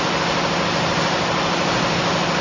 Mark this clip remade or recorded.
recorded